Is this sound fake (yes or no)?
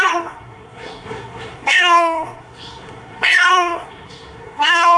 yes